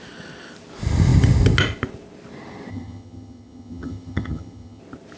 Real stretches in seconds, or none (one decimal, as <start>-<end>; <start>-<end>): 0.0-2.7; 4.8-5.2